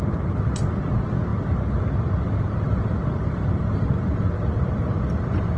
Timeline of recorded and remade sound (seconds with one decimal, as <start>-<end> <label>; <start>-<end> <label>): 0.0-5.6 recorded